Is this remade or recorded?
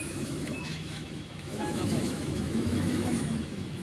remade